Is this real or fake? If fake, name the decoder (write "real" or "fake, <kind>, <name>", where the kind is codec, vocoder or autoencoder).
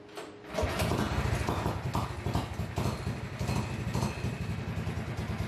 real